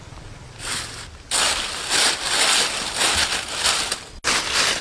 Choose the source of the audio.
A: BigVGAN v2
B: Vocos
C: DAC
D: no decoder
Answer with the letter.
D